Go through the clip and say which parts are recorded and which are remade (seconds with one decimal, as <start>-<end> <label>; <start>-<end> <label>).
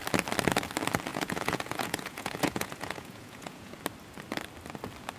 0.0-1.1 recorded; 1.1-3.8 remade; 3.8-5.2 recorded